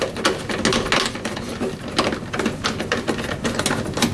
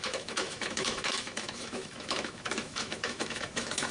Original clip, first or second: first